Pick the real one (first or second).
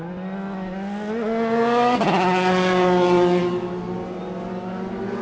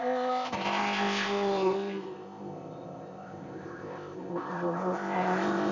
first